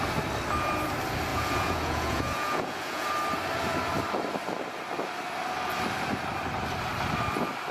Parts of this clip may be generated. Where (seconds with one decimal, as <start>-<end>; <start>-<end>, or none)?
1.3-3.1